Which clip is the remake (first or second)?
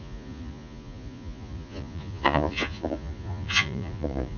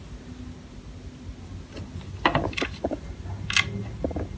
first